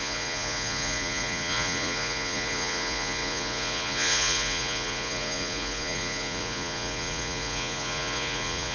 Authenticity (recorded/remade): remade